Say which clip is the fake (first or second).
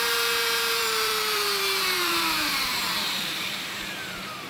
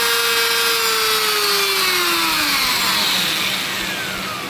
first